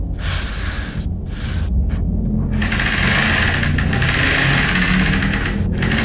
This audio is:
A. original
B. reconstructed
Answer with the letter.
A